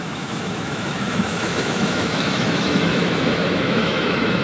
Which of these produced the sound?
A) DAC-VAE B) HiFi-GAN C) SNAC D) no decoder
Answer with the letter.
A